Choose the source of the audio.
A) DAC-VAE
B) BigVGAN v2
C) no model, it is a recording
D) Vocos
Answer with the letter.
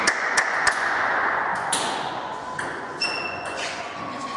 D